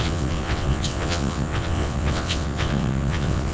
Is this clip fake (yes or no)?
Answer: yes